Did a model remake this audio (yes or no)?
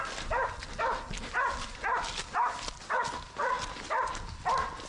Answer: no